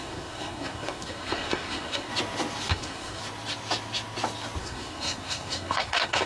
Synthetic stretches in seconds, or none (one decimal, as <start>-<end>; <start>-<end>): 0.0-2.1; 2.7-3.2; 4.6-6.3